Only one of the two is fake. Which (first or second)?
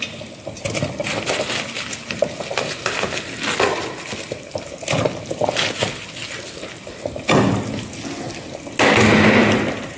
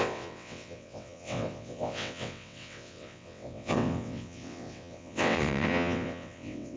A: second